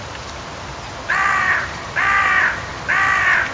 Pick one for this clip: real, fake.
real